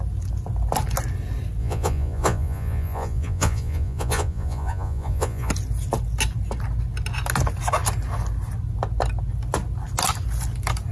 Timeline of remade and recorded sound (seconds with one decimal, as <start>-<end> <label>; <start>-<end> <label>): 0.0-1.6 recorded; 1.6-5.5 remade; 5.5-10.9 recorded